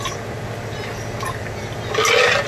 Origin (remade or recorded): recorded